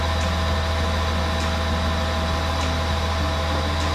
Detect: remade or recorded recorded